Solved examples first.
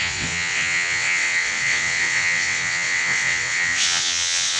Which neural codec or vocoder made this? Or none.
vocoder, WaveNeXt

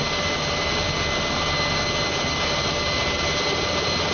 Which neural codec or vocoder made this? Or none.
none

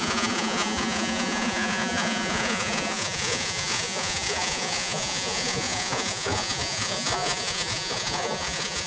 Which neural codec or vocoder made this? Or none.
vocoder, Vocos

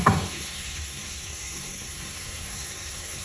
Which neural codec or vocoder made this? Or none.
codec, SNAC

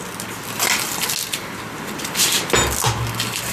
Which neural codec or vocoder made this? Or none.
none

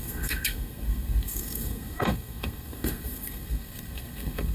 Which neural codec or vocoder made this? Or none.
codec, SNAC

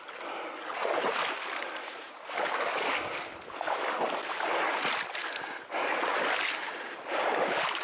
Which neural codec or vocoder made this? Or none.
none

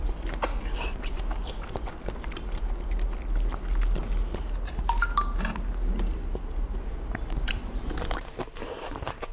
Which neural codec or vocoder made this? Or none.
none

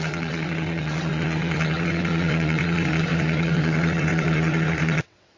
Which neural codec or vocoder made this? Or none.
vocoder, WaveNeXt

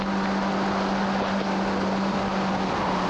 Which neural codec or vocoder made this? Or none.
none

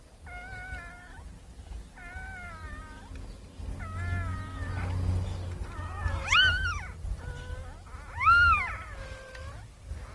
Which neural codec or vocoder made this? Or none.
none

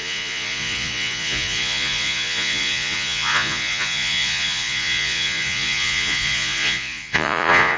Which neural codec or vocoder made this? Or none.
vocoder, Vocos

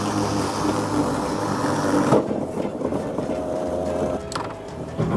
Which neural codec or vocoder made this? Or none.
none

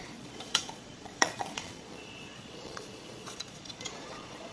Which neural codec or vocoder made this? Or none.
vocoder, Vocos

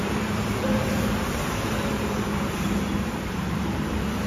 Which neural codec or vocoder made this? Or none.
vocoder, BigVGAN v2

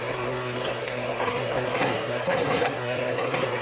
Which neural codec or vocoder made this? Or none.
codec, SNAC